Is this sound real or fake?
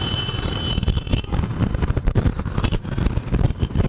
fake